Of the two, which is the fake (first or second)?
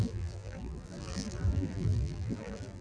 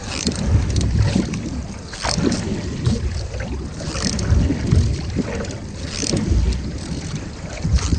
first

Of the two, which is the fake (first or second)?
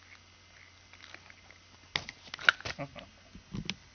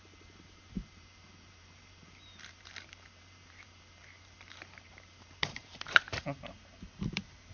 second